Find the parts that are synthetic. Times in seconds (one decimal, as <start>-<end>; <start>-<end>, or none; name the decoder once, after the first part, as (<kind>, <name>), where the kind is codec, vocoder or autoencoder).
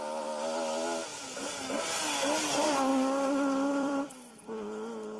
1.1-1.7 (vocoder, BigVGAN v2); 2.9-4.3